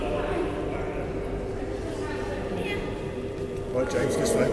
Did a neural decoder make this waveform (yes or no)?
no